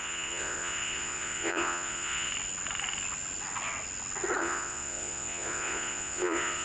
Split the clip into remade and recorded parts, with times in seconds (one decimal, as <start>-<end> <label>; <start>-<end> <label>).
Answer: 0.0-2.3 remade; 2.3-4.4 recorded; 4.4-6.6 remade